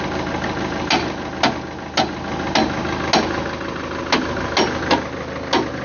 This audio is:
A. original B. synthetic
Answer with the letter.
A